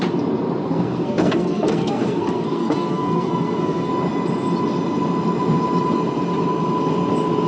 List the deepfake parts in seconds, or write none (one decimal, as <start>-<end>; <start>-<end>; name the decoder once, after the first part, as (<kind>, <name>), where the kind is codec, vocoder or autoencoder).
0.6-3.9 (codec, SNAC)

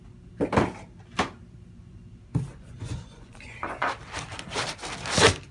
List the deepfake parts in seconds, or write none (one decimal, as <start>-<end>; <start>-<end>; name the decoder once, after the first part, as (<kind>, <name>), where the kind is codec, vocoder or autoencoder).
2.5-3.9 (vocoder, Vocos)

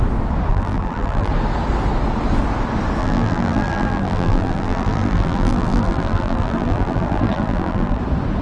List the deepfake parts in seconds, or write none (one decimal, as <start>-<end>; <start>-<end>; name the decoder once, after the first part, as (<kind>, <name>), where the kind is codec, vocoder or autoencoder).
0.5-1.3 (vocoder, BigVGAN v2); 3.0-8.0

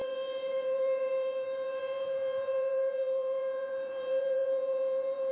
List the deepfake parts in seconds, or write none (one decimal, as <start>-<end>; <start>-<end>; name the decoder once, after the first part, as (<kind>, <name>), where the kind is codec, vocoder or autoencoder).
0.0-5.3 (vocoder, Vocos)

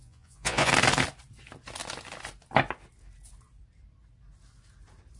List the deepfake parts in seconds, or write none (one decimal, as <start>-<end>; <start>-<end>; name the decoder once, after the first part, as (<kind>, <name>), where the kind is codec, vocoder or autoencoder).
0.0-0.7 (vocoder, Vocos)

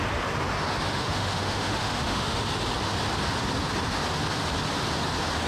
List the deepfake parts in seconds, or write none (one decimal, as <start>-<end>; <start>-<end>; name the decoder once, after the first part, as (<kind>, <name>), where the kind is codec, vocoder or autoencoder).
0.9-2.4 (autoencoder, DAC-VAE)

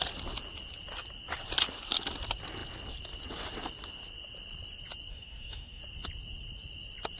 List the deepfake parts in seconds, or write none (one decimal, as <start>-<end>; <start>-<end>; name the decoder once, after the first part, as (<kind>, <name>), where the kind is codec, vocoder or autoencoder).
5.1-5.8 (codec, DAC)

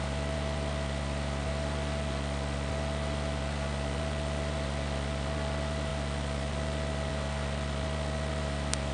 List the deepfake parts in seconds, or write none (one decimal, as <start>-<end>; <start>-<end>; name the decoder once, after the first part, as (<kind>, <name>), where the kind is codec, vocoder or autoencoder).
none